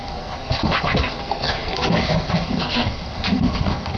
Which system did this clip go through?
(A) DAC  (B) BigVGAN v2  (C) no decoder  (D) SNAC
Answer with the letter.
D